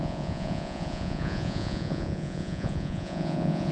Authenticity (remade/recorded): remade